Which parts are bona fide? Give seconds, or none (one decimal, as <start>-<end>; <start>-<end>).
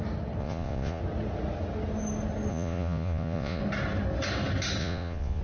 0.0-0.4; 1.0-2.5; 3.6-4.8